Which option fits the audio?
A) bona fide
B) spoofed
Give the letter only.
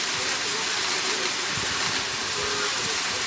A